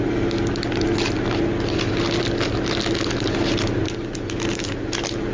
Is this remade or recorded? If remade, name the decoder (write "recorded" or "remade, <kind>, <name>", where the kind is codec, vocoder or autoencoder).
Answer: recorded